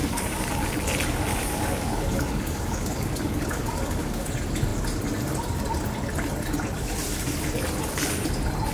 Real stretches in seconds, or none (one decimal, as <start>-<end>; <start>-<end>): 0.7-1.3; 4.3-8.7